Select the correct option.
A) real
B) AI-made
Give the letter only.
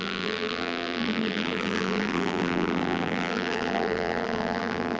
B